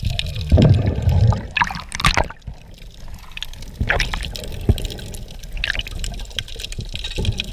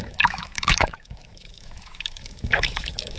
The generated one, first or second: second